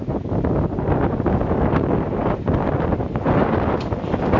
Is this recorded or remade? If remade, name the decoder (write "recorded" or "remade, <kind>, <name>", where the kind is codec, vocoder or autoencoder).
recorded